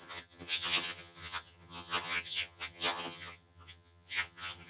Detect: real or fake fake